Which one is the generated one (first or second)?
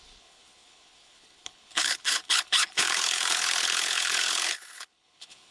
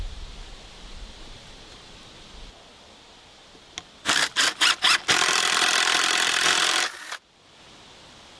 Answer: first